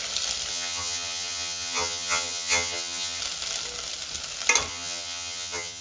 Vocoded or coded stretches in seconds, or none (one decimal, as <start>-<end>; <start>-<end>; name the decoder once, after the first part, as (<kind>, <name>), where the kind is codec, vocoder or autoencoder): 0.5-3.2 (vocoder, HiFi-GAN); 4.7-5.8